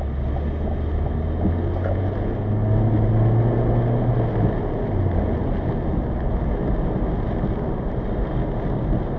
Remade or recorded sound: recorded